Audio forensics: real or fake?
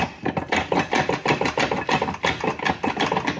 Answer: real